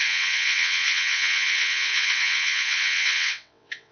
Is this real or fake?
fake